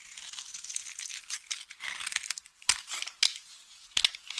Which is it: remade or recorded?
recorded